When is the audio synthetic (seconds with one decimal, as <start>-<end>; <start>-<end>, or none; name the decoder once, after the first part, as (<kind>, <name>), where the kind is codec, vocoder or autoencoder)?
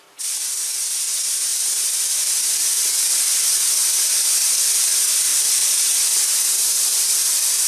1.5-4.1 (vocoder, BigVGAN v2); 5.3-6.5